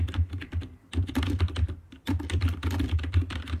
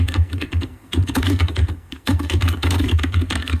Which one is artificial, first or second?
second